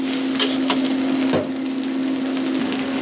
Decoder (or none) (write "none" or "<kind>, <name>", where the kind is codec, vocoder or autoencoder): none